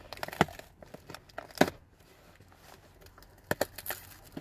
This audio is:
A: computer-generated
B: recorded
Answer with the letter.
B